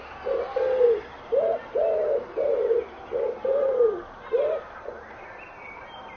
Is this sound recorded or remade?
recorded